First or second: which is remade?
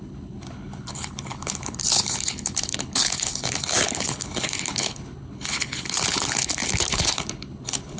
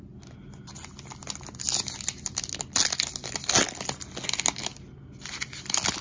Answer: first